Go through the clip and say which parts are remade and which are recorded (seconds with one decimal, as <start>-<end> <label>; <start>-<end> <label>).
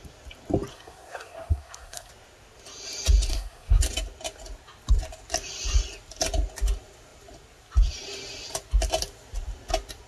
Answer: 0.0-0.7 recorded; 0.7-2.1 remade; 2.1-3.3 recorded; 3.3-3.8 remade; 3.8-10.1 recorded